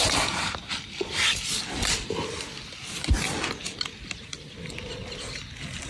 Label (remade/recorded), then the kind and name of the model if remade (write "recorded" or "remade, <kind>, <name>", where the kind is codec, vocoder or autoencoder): recorded